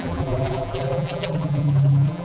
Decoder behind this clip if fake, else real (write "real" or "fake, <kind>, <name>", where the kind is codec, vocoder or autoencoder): fake, vocoder, BigVGAN v2